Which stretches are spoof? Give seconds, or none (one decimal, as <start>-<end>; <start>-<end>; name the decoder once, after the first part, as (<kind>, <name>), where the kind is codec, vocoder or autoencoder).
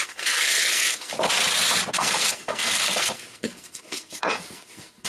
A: 0.0-1.1 (codec, SNAC); 1.9-5.1